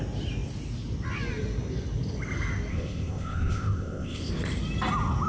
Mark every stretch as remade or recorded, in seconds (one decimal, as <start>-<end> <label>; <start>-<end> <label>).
0.0-2.7 recorded; 2.7-4.3 remade; 4.3-5.3 recorded